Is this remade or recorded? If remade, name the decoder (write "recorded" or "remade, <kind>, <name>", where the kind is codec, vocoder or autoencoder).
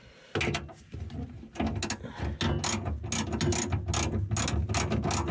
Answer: recorded